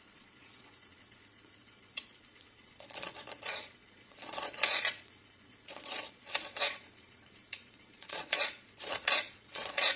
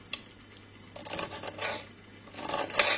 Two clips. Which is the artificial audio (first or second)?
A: first